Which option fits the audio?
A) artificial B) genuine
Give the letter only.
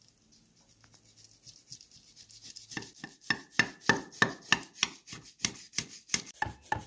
B